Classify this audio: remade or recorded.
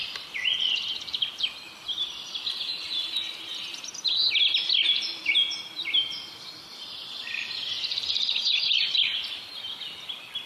recorded